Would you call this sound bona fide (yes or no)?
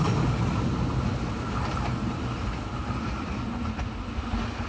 yes